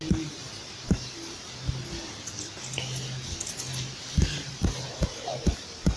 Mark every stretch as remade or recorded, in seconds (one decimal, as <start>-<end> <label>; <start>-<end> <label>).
0.0-6.0 recorded

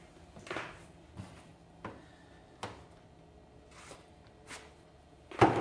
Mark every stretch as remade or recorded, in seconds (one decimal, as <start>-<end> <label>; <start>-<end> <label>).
0.0-5.6 recorded

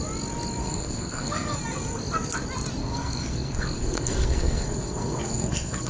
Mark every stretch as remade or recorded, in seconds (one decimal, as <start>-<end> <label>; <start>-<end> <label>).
0.0-0.6 recorded; 0.6-1.6 remade; 1.6-2.8 recorded; 2.8-5.9 remade

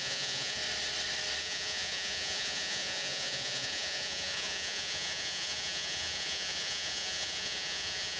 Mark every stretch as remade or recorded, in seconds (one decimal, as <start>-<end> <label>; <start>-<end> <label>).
0.0-0.6 remade; 0.6-1.4 recorded; 1.4-8.2 remade

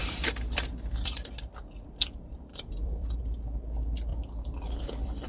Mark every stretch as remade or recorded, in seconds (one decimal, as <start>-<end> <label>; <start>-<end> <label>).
0.0-1.3 remade; 1.3-2.5 recorded; 2.5-3.2 remade; 3.2-4.1 recorded; 4.1-5.3 remade

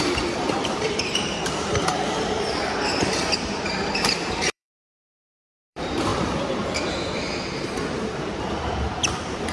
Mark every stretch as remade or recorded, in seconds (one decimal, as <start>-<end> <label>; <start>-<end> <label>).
0.0-9.5 remade